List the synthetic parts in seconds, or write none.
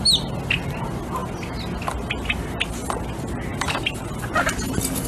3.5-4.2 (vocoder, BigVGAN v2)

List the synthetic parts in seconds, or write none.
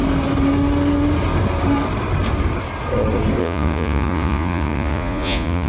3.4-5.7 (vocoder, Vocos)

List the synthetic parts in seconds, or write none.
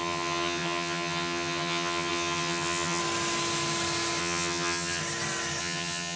0.0-3.0 (vocoder, HiFi-GAN); 4.2-5.0; 5.6-6.2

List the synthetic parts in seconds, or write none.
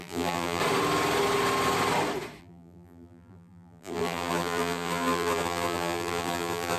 0.0-0.6 (vocoder, BigVGAN v2); 2.4-6.8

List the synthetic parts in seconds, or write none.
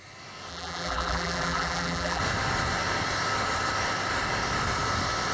0.5-2.2 (vocoder, BigVGAN v2)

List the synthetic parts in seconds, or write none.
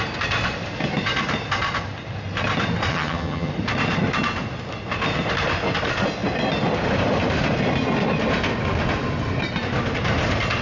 2.9-3.5 (vocoder, HiFi-GAN)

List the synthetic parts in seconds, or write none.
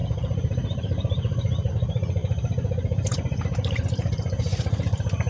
0.0-1.7 (vocoder, BigVGAN v2); 2.2-5.3